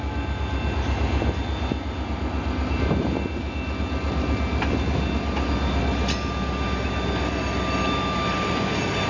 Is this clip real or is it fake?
real